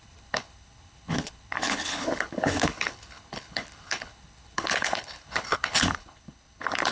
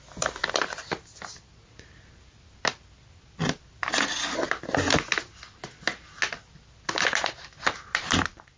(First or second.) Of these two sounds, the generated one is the first